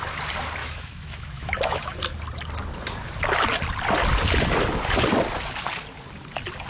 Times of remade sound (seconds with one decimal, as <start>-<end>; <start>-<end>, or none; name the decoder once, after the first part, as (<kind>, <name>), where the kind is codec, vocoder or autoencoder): 0.6-2.0 (autoencoder, DAC-VAE)